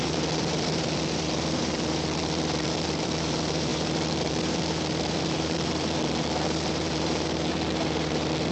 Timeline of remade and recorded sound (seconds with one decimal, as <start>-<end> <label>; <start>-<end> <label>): 0.0-8.5 remade